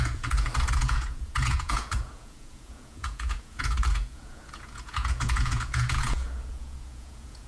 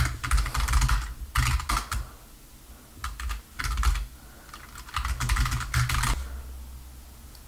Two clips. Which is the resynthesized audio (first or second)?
first